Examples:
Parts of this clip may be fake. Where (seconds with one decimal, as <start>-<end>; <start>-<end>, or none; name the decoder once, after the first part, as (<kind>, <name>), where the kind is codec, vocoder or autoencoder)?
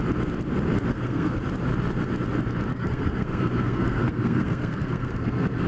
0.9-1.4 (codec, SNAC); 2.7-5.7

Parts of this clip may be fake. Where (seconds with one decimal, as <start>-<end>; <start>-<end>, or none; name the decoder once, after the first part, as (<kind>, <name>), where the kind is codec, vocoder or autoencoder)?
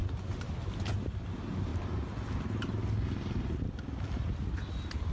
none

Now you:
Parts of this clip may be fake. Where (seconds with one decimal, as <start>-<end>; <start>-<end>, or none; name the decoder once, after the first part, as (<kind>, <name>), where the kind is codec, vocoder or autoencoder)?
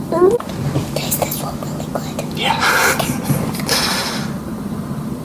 none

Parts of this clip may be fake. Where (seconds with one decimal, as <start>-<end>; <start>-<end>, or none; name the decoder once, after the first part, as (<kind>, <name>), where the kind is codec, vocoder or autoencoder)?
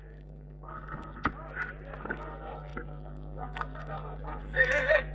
0.0-1.3 (codec, SNAC); 2.0-5.1